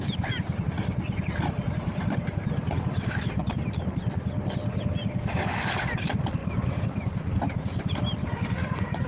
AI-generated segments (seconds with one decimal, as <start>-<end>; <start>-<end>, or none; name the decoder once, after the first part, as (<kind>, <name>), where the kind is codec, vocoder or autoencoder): 0.0-3.4 (vocoder, BigVGAN v2); 4.7-6.4; 7.9-9.1